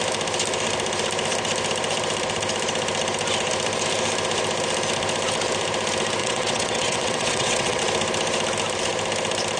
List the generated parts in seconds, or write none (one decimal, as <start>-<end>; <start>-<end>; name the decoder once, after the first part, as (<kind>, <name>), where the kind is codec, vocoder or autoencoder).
6.2-7.8 (vocoder, WaveNeXt)